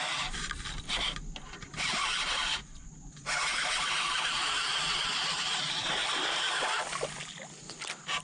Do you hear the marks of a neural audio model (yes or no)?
no